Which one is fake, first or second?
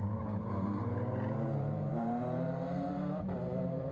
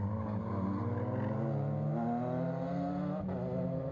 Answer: first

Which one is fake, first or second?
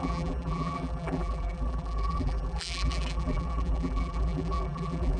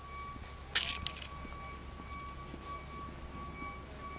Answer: first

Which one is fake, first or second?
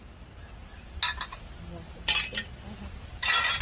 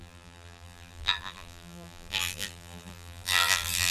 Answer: second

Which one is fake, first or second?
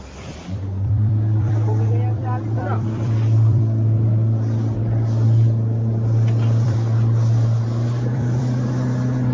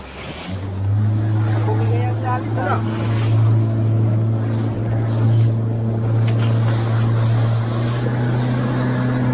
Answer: first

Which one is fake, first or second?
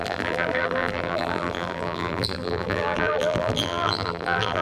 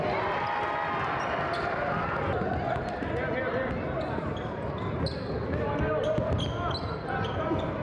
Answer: first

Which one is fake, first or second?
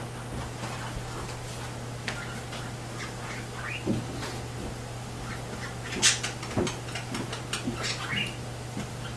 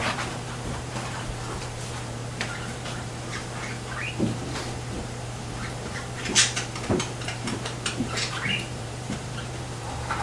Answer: second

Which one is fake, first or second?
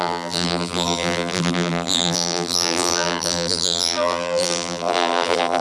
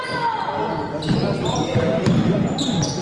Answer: first